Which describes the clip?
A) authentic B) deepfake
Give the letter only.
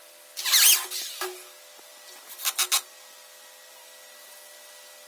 A